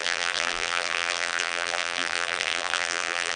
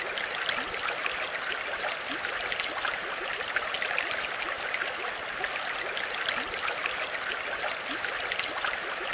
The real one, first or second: second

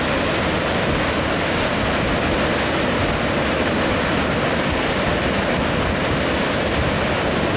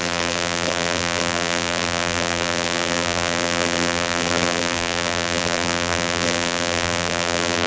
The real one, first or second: first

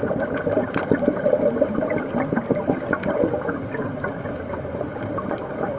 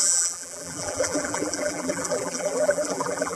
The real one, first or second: first